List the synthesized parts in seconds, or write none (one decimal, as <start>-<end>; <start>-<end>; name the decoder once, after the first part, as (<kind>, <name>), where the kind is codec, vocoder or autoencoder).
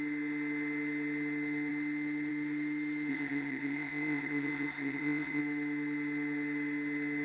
3.1-5.4 (codec, ZipCodec)